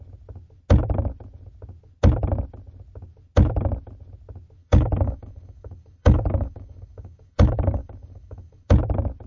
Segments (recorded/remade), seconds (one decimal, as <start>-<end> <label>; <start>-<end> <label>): 0.0-4.6 recorded; 4.6-8.7 remade; 8.7-9.3 recorded